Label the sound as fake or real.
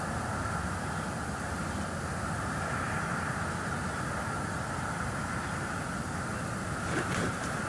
real